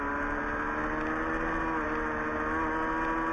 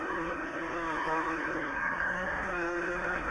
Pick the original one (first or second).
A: first